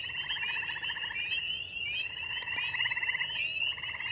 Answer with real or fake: real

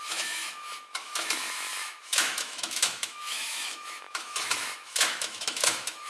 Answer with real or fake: fake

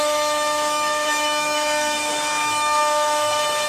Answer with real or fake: fake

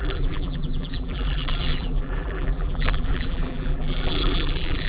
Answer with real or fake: fake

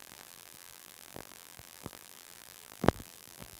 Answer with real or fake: fake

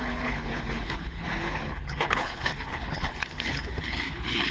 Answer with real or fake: fake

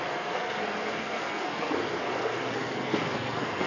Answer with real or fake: fake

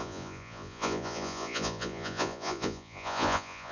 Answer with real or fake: fake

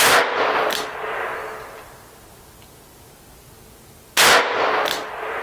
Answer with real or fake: real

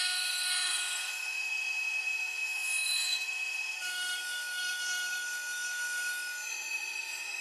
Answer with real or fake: fake